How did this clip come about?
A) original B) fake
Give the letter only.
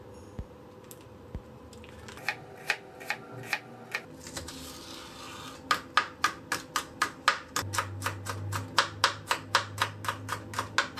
A